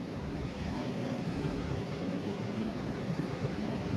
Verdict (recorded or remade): remade